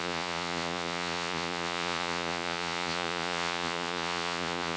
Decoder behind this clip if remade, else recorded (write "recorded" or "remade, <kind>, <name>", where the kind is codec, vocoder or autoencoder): remade, vocoder, Vocos